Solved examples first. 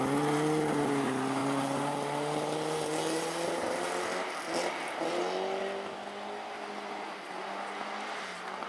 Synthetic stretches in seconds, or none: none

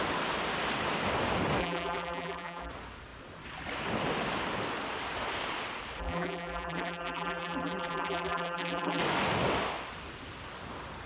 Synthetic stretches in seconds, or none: 1.6-2.7 (vocoder, BigVGAN v2); 6.0-9.0

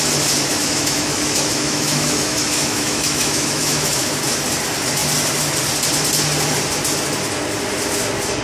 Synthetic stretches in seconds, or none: 0.5-4.2 (autoencoder, DAC-VAE)

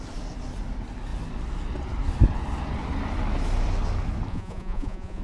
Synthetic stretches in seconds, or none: 4.3-5.2 (vocoder, Vocos)

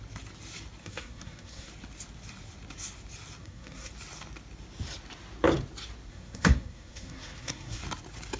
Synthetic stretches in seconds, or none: 0.8-1.7 (codec, SNAC); 3.4-3.9; 6.1-7.8

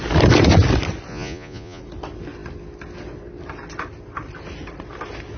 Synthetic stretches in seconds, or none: 1.1-1.8 (vocoder, Vocos)